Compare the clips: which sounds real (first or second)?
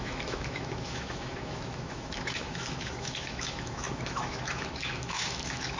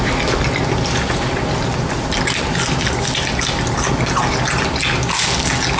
second